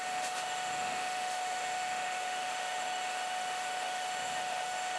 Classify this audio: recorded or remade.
remade